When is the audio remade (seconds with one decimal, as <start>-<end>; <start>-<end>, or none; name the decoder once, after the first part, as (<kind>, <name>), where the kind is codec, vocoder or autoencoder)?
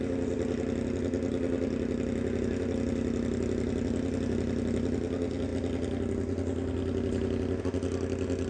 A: none